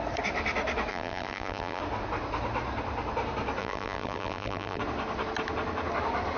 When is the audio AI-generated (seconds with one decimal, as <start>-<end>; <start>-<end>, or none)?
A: 0.9-1.8; 3.6-4.8